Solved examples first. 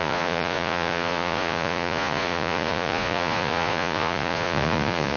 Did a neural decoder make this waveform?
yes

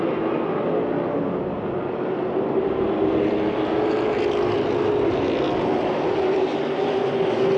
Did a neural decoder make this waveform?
no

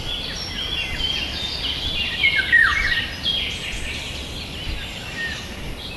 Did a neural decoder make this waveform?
no